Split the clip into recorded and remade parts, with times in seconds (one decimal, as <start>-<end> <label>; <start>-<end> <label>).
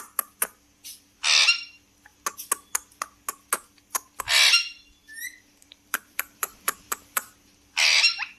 0.0-0.9 recorded; 0.9-1.4 remade; 1.4-5.0 recorded; 5.0-8.4 remade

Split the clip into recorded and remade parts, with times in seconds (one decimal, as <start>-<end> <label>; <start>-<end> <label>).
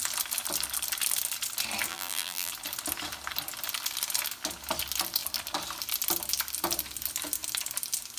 0.0-1.9 recorded; 1.9-2.5 remade; 2.5-8.2 recorded